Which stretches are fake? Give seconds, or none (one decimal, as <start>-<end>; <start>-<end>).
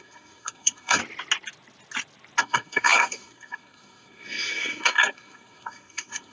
0.0-1.0; 2.4-6.3